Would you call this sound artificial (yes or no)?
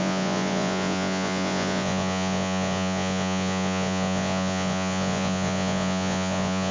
yes